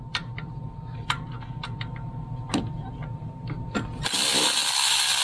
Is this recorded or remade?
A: recorded